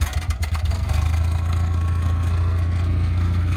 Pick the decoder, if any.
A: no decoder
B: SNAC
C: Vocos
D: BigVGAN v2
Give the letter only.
B